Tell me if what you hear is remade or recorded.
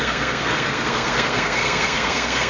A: remade